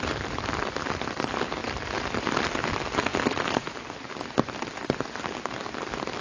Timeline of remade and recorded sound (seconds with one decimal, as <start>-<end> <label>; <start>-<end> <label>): 0.0-6.2 recorded